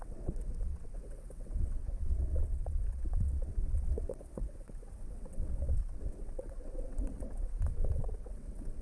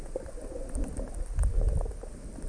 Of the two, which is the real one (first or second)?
second